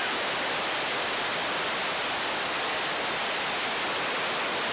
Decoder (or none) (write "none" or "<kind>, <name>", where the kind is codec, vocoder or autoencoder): none